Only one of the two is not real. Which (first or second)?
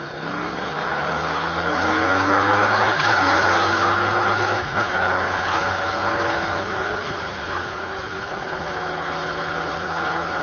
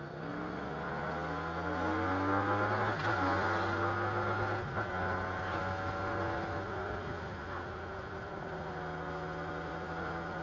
first